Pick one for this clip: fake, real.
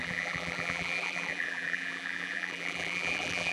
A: fake